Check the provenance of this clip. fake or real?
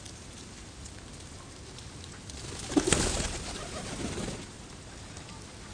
real